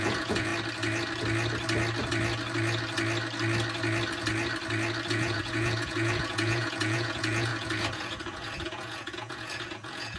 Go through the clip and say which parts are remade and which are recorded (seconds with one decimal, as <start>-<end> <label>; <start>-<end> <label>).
0.0-0.5 remade; 0.5-5.1 recorded; 5.1-10.2 remade